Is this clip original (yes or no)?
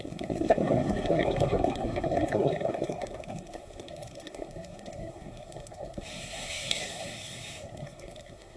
no